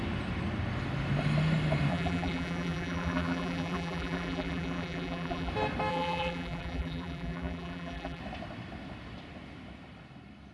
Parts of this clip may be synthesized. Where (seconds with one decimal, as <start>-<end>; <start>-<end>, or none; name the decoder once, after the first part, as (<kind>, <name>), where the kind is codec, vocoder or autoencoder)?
1.9-5.5 (vocoder, BigVGAN v2); 5.9-8.2